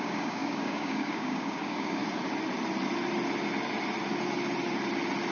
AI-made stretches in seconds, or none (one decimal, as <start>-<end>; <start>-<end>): 0.0-2.0